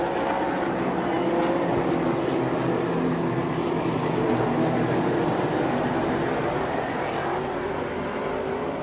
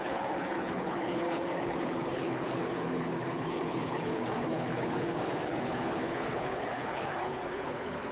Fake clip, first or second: second